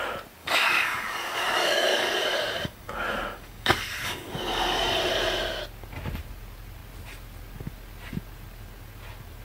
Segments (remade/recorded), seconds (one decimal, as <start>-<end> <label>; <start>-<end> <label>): 0.0-0.4 recorded; 0.4-5.0 remade; 5.0-9.4 recorded